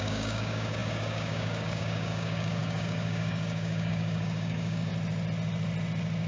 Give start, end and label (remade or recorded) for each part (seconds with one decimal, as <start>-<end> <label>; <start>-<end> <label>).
0.0-4.9 remade; 4.9-6.3 recorded